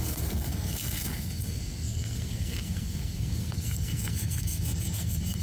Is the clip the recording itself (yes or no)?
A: no